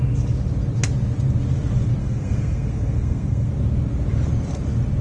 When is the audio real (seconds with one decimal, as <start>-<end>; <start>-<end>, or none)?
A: 0.0-2.0; 3.5-5.0